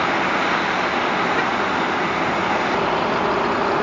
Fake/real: real